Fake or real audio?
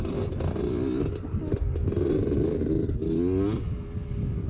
real